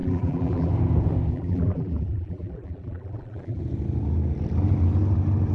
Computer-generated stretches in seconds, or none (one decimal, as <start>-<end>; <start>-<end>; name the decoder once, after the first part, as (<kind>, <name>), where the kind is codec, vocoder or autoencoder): 0.0-0.7 (vocoder, BigVGAN v2); 1.3-3.6

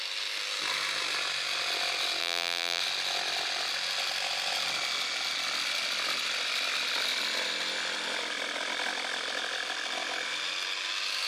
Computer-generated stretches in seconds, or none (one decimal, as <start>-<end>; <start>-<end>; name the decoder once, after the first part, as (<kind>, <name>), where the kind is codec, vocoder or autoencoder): 2.2-2.8 (vocoder, BigVGAN v2)

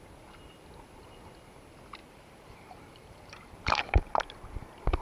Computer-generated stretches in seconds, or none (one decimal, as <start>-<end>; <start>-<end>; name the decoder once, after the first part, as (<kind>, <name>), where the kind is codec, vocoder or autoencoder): 2.0-4.2 (vocoder, BigVGAN v2)

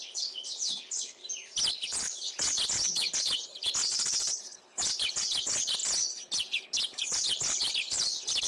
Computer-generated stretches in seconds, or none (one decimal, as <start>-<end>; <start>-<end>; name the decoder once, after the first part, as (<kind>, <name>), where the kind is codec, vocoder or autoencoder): 0.0-1.2 (codec, HILCodec); 1.7-8.5

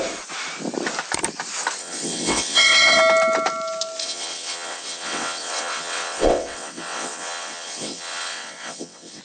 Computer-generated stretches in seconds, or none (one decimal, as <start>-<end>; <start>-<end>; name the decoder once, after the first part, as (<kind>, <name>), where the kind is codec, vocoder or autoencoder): 1.8-3.0 (vocoder, WaveNeXt); 4.0-9.2